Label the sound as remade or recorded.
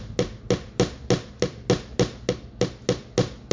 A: recorded